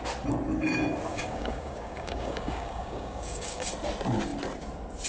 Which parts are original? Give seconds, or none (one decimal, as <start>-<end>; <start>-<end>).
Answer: 0.0-1.1; 3.7-5.1

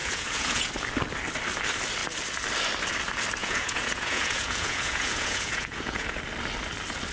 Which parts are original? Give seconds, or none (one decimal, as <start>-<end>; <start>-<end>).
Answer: 0.7-3.4; 6.2-7.1

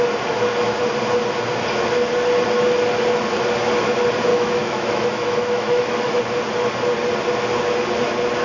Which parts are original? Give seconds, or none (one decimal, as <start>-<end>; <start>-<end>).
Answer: 0.0-4.3; 6.2-8.4

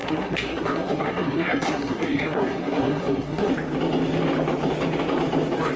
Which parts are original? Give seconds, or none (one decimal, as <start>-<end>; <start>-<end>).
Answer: 3.5-5.8

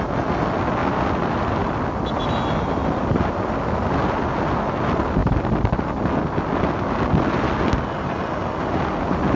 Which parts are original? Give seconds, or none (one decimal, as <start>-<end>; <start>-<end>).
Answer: 0.0-9.4